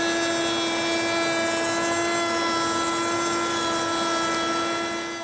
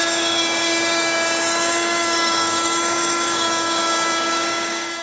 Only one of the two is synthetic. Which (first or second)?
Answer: second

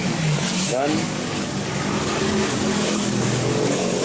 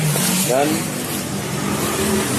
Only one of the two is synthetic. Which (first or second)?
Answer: first